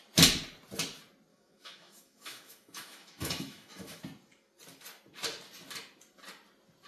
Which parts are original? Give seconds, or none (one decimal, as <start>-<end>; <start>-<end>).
0.0-1.3; 4.0-6.9